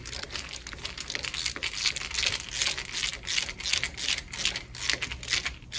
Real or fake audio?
real